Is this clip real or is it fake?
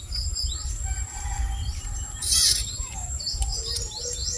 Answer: fake